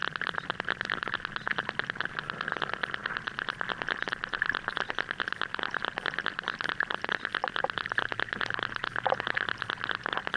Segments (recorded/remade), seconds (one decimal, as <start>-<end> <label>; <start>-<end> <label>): 0.0-10.4 recorded